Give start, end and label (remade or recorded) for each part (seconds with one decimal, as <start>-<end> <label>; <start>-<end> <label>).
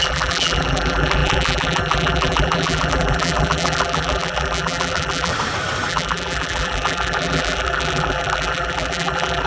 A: 0.0-5.3 remade; 5.3-5.9 recorded; 5.9-9.5 remade